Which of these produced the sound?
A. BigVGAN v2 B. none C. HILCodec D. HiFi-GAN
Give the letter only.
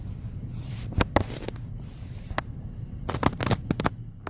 A